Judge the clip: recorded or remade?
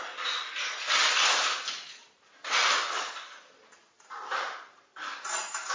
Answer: recorded